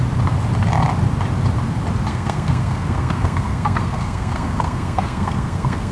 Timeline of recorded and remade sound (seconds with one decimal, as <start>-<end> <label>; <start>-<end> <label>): 0.0-2.1 recorded; 2.1-5.9 remade